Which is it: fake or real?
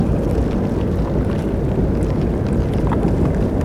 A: real